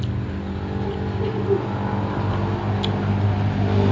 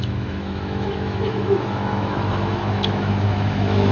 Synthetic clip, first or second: second